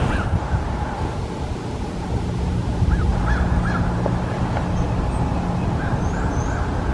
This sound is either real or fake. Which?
real